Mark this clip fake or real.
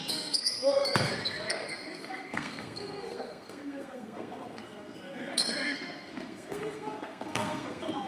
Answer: fake